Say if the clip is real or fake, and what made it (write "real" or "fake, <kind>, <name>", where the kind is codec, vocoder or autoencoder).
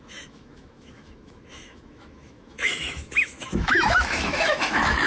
fake, autoencoder, DAC-VAE